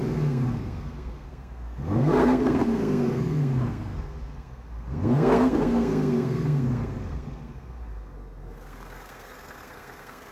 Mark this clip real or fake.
fake